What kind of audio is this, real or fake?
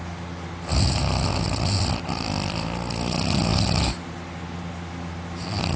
real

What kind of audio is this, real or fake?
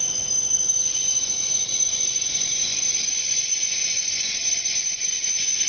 fake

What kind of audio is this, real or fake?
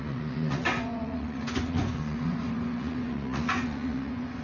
fake